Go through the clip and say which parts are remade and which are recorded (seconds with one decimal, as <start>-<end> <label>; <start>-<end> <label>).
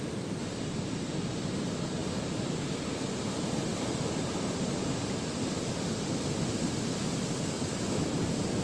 0.0-8.6 recorded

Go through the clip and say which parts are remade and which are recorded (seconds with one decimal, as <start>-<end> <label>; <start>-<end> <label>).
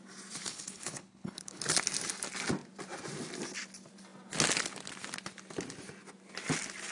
0.0-0.5 recorded; 0.5-1.6 remade; 1.6-6.9 recorded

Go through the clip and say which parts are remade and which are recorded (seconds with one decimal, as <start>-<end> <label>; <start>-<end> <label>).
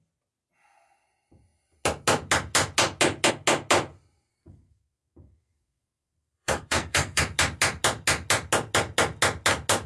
0.0-4.3 recorded; 4.3-7.2 remade; 7.2-9.9 recorded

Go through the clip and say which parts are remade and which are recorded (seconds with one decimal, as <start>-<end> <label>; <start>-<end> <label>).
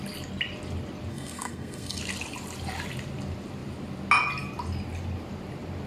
0.0-1.1 recorded; 1.1-2.0 remade; 2.0-5.9 recorded